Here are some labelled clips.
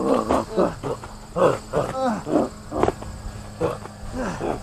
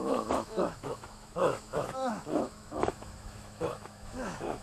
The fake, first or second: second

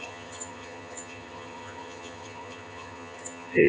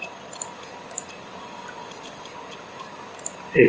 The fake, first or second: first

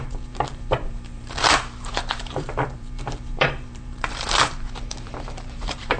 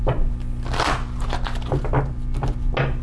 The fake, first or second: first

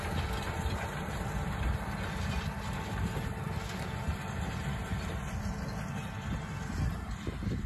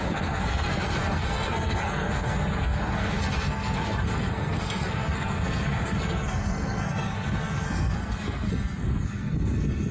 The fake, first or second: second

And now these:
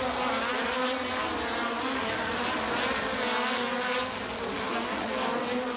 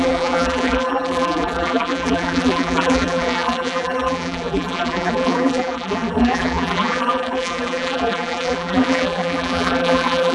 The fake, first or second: second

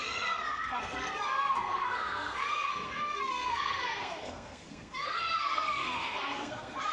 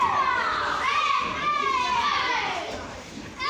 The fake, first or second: first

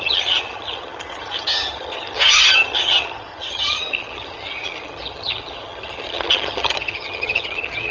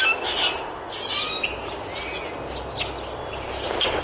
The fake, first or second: first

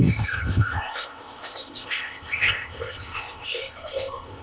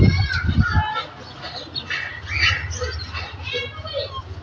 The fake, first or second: first